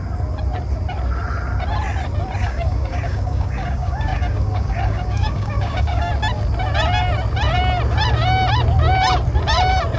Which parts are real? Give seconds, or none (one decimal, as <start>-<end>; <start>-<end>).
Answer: 0.0-2.4; 6.1-10.0